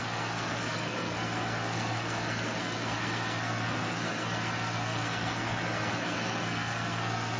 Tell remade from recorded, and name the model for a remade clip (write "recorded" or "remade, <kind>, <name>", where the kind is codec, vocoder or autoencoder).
remade, codec, SNAC